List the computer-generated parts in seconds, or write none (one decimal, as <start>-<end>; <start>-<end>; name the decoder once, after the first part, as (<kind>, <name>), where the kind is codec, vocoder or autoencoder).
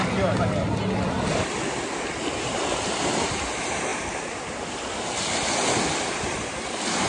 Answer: none